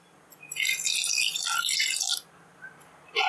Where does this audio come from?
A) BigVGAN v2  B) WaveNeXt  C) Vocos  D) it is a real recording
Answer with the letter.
D